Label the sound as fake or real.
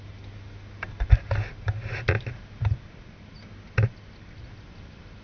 real